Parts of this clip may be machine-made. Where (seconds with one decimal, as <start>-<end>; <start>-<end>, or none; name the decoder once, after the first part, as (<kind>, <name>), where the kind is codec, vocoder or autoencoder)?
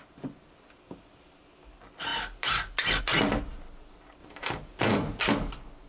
4.2-4.8 (vocoder, BigVGAN v2)